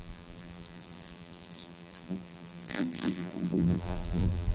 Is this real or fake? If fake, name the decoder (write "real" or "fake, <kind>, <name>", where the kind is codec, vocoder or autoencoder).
fake, vocoder, BigVGAN v2